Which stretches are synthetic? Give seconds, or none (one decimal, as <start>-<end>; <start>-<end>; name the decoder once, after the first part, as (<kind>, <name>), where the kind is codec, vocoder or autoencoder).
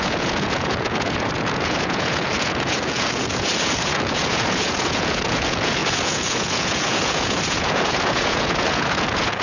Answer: 0.0-9.4 (vocoder, Vocos)